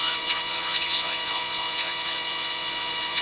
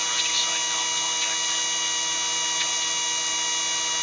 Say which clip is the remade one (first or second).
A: first